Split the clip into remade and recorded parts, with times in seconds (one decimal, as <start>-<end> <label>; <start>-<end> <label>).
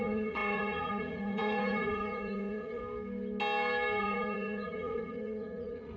0.0-2.8 remade; 2.8-4.0 recorded; 4.0-6.0 remade